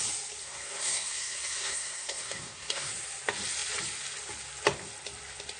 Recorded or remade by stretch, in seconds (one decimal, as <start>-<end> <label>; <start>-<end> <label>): 0.0-0.4 recorded; 0.4-2.9 remade; 2.9-5.6 recorded